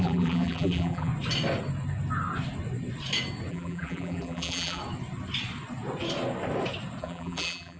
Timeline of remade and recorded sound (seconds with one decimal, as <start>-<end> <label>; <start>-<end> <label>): 0.0-1.1 remade; 1.1-3.5 recorded; 3.5-4.8 remade; 4.8-7.0 recorded; 7.0-7.8 remade